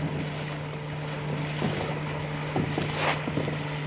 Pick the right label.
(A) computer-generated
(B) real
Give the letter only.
B